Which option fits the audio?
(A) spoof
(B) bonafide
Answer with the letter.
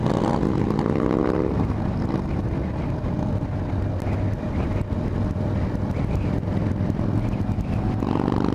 B